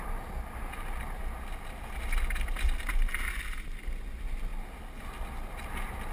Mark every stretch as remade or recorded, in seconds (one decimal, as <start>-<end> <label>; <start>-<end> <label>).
0.0-6.1 recorded